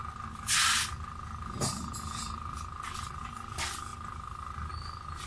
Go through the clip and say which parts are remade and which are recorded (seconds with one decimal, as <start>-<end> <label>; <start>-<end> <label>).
0.0-5.3 recorded